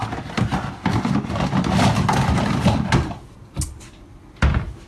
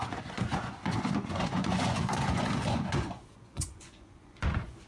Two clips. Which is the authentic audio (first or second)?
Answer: first